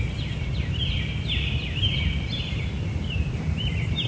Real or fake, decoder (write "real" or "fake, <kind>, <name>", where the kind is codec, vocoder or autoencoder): real